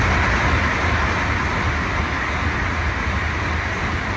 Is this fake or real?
real